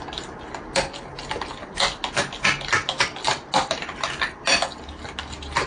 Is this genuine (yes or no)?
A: yes